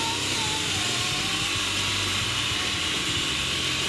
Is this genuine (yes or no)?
no